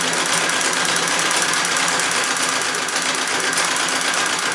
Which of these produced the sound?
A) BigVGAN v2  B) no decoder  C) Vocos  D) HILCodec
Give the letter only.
B